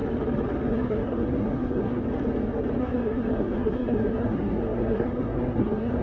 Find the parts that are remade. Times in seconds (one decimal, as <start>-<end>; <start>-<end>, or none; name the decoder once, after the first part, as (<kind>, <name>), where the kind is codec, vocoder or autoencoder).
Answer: 0.7-2.0 (codec, SNAC); 2.8-6.0